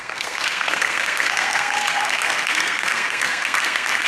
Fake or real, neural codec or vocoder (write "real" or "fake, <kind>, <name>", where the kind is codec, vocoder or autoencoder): fake, codec, SNAC